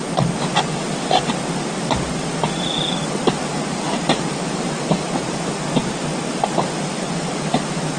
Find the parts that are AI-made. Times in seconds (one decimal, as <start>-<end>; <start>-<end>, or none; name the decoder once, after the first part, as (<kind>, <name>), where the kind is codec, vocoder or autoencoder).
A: none